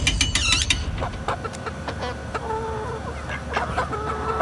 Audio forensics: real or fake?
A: real